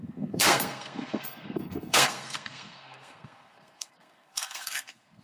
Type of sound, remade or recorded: remade